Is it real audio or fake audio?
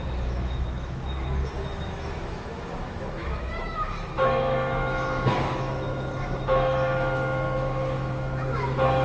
fake